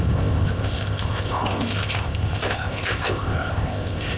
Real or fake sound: fake